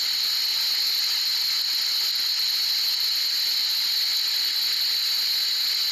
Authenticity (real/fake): real